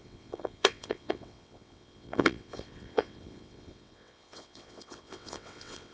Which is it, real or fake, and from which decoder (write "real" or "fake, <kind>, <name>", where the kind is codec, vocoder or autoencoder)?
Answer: fake, vocoder, WaveNeXt